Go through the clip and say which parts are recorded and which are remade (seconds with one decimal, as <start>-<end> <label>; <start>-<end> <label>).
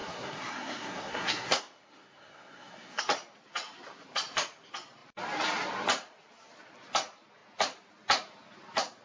0.0-3.0 remade; 3.0-9.0 recorded